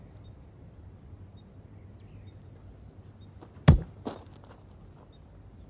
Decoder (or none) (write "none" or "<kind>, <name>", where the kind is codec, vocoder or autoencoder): none